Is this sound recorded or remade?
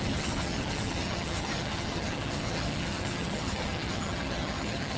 remade